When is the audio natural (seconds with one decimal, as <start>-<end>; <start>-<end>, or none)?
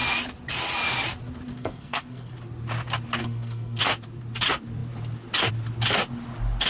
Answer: 0.0-1.5; 2.3-3.2; 3.8-6.7